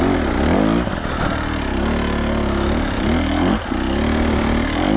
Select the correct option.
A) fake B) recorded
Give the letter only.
B